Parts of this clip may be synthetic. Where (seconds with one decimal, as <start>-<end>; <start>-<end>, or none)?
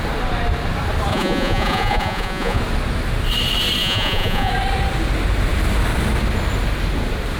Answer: 1.1-2.6; 3.8-4.5